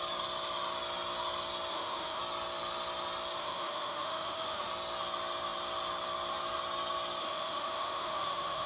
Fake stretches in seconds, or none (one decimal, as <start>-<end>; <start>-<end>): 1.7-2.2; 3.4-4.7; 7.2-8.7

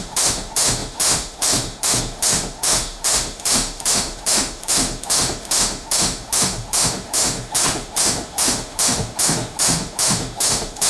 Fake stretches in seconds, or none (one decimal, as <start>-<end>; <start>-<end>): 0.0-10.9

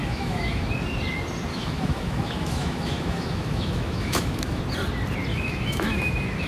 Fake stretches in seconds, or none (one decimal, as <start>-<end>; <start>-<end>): 0.0-0.6; 1.5-4.6; 5.3-6.5

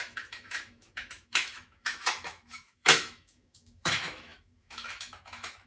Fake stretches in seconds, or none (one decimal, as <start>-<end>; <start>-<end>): 0.0-5.7